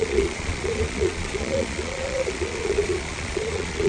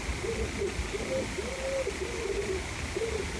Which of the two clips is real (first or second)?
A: second